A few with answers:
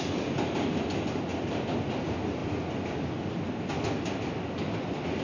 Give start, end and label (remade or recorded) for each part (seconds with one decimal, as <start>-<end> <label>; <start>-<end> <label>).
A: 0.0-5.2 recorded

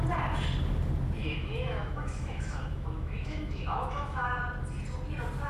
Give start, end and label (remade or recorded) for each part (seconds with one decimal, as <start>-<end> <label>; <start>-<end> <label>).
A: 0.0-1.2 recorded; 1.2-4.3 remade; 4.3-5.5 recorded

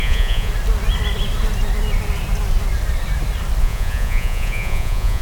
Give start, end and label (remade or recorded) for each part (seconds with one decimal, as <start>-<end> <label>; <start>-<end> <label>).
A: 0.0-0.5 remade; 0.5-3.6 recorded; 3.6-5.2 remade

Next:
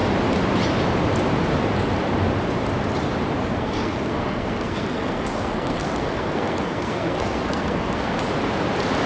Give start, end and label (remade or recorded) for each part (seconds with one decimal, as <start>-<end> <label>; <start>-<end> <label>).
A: 0.0-3.4 recorded; 3.4-8.2 remade; 8.2-9.1 recorded

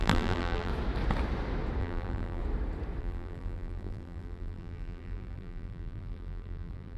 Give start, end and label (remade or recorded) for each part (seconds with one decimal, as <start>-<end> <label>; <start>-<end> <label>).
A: 0.0-0.7 remade; 0.7-1.8 recorded; 1.8-2.4 remade; 2.4-3.0 recorded; 3.0-7.0 remade